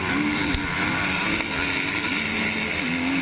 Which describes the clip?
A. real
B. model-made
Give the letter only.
A